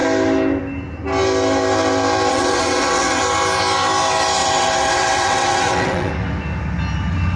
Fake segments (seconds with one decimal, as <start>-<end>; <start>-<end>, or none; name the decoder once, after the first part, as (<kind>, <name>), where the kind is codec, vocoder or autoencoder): 2.3-3.2 (vocoder, WaveNeXt); 4.4-6.1